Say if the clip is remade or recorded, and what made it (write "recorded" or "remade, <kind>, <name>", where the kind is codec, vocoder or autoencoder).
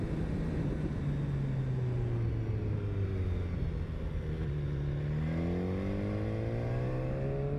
recorded